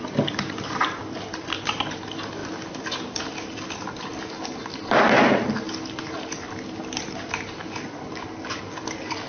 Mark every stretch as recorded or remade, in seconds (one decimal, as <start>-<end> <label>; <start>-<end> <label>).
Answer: 0.0-9.3 recorded